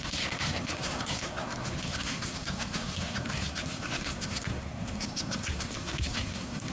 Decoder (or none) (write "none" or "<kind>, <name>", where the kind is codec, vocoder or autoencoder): codec, SNAC